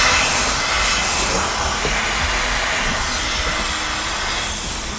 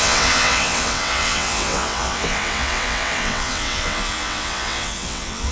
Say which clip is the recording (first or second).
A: first